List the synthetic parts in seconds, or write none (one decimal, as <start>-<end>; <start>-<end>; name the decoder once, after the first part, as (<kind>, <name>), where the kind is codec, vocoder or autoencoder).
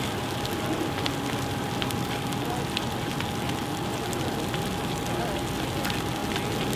none